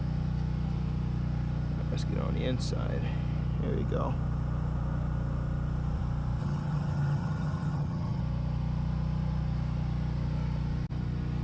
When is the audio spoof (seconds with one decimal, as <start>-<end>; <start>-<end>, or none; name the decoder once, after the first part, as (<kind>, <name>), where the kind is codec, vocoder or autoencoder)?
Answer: 6.4-8.2 (vocoder, HiFi-GAN)